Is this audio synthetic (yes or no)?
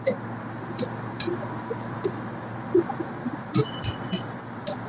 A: no